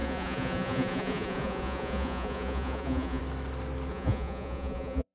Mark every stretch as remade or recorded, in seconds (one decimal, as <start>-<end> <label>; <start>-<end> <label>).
0.0-3.2 remade; 3.2-3.9 recorded; 3.9-5.1 remade